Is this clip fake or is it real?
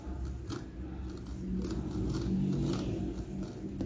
real